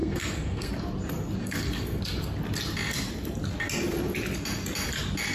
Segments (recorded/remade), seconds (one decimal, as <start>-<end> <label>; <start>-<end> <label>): 0.0-0.7 remade; 0.7-1.4 recorded; 1.4-2.0 remade; 2.0-5.3 recorded